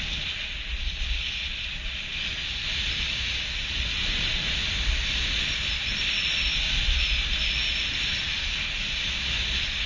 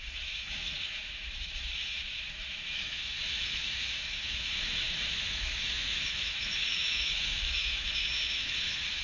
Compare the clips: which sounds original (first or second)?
first